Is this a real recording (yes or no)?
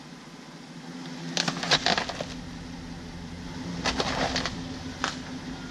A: yes